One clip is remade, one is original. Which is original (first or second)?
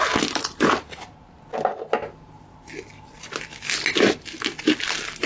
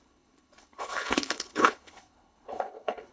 first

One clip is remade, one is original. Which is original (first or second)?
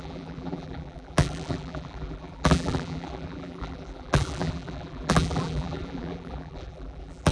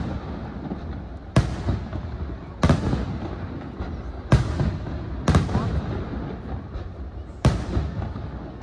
second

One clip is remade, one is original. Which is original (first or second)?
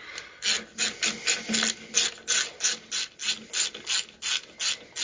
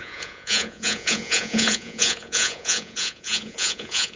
first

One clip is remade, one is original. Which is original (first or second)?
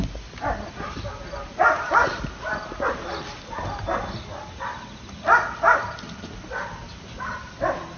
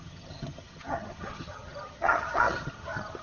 first